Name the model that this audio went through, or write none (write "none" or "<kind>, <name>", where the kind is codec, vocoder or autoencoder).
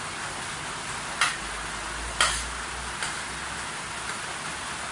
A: none